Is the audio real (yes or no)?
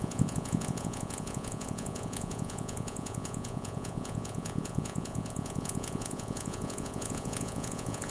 no